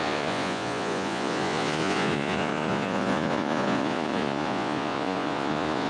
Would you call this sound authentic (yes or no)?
no